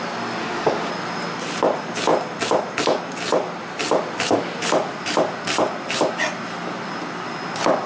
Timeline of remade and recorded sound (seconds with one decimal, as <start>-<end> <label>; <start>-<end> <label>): 0.0-0.4 recorded; 0.4-0.9 remade; 0.9-7.9 recorded